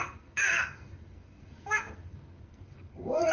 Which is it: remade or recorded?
remade